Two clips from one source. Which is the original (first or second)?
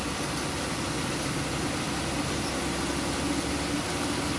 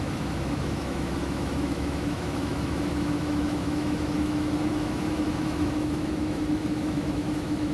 first